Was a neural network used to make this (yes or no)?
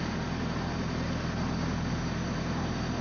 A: no